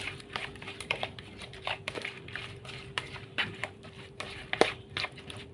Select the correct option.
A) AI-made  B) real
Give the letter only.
A